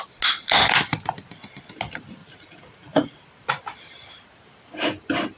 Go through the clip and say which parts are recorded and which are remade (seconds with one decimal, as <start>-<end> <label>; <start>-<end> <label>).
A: 0.0-2.2 recorded; 2.2-3.2 remade; 3.2-5.4 recorded